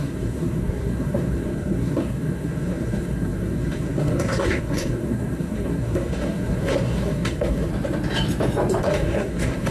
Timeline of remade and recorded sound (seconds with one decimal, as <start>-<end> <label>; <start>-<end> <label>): 0.0-7.7 remade; 7.7-8.8 recorded; 8.8-9.7 remade

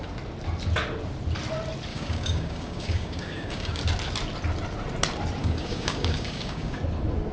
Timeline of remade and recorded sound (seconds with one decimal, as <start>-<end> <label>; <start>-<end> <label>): 0.0-1.9 recorded; 1.9-3.8 remade; 3.8-5.4 recorded; 5.4-6.8 remade; 6.8-7.3 recorded

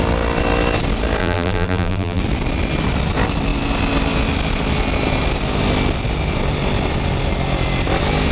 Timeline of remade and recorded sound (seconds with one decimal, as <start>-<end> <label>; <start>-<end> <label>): 0.0-1.2 recorded; 1.2-2.2 remade; 2.2-8.3 recorded